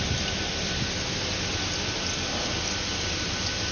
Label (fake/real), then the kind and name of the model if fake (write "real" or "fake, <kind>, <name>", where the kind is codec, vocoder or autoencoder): real